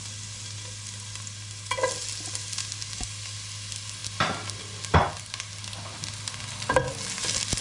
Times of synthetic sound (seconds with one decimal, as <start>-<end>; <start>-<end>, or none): none